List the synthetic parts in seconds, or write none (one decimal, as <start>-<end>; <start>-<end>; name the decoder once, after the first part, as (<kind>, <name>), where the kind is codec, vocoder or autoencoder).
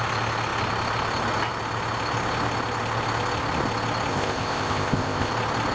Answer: 4.1-5.3 (codec, ZipCodec)